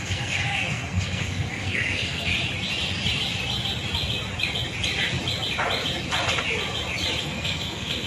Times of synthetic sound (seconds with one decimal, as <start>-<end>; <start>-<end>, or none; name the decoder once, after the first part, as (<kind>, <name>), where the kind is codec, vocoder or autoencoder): 0.0-2.3 (codec, SNAC); 7.2-8.1